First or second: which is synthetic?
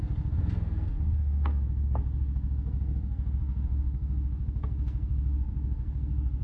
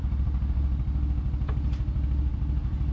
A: first